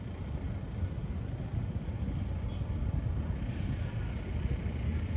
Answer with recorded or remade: recorded